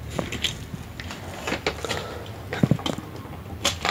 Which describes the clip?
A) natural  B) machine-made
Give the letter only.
A